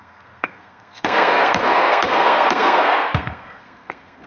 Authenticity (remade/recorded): remade